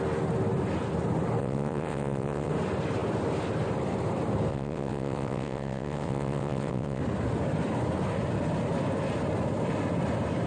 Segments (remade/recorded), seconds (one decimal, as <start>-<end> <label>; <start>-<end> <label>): 0.0-1.4 recorded; 1.4-2.5 remade; 2.5-4.5 recorded; 4.5-7.0 remade; 7.0-10.5 recorded